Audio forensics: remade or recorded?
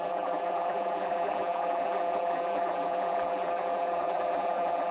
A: remade